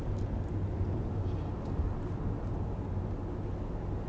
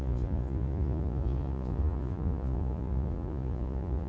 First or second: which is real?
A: first